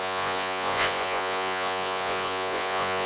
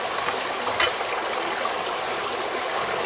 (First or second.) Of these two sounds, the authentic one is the second